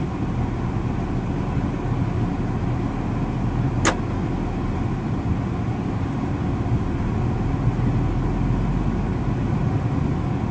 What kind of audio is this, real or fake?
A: real